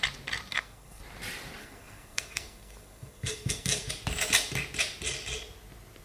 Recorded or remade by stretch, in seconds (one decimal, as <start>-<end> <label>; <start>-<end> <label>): 0.0-0.5 recorded; 0.5-1.0 remade; 1.0-1.6 recorded; 1.6-3.9 remade; 3.9-6.0 recorded